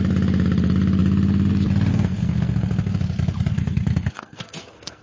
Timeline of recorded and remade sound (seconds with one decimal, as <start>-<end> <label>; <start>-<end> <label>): 0.0-1.9 recorded; 1.9-3.0 remade; 3.0-3.5 recorded; 3.5-5.0 remade